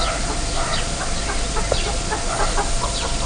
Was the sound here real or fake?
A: real